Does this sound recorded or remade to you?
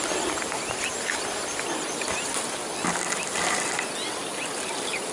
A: remade